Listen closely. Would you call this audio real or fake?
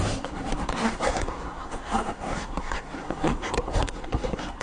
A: fake